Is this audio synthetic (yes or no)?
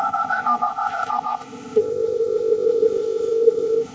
yes